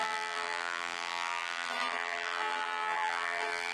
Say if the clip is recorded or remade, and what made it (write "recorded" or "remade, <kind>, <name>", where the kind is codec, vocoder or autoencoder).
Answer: remade, vocoder, BigVGAN v2